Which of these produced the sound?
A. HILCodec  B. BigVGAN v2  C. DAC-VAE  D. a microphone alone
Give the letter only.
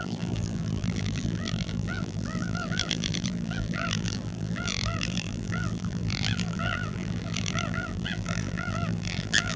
B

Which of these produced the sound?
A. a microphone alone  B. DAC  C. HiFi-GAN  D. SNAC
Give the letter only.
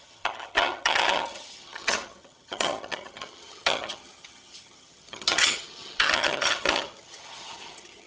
C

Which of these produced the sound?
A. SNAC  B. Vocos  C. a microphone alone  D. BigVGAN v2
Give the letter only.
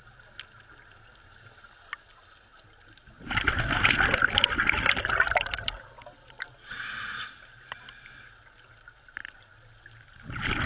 C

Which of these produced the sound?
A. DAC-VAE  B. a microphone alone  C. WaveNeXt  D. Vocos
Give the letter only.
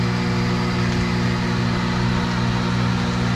B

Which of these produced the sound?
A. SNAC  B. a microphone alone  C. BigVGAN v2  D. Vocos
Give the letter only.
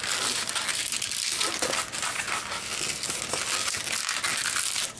B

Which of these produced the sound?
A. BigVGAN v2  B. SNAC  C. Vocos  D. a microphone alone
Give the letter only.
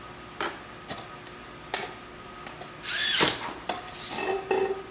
D